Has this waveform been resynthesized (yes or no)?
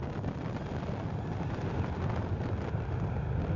no